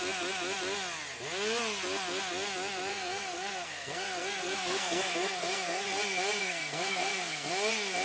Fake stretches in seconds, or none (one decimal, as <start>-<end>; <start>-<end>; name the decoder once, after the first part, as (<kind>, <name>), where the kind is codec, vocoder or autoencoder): 2.9-5.8 (codec, SNAC); 6.4-7.5